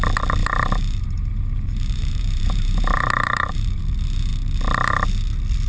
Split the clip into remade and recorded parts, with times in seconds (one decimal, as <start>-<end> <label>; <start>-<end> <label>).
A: 0.0-0.4 recorded; 0.4-3.8 remade; 3.8-5.7 recorded